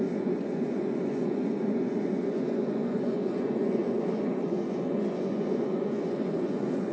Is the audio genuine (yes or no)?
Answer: no